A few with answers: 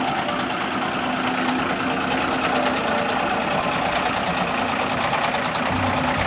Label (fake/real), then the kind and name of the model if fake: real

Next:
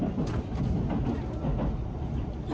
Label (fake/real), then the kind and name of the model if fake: real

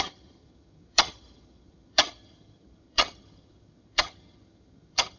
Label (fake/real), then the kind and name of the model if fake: fake, vocoder, HiFi-GAN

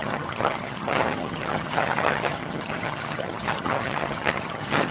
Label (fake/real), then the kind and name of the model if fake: fake, vocoder, HiFi-GAN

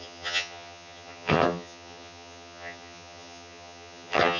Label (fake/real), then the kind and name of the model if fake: fake, vocoder, HiFi-GAN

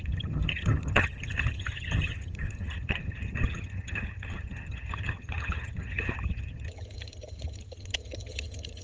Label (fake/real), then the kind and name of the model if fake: fake, vocoder, HiFi-GAN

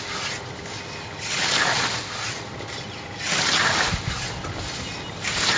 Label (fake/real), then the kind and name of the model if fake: real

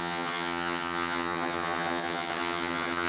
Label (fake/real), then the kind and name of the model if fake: fake, vocoder, HiFi-GAN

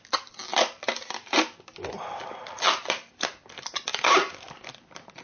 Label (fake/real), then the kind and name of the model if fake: real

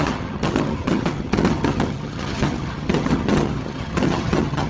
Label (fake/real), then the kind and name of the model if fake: fake, vocoder, HiFi-GAN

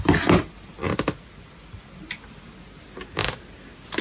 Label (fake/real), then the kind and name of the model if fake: real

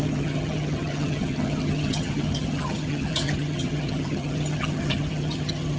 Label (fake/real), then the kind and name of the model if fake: fake, vocoder, HiFi-GAN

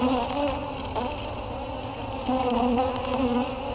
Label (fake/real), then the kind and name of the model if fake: real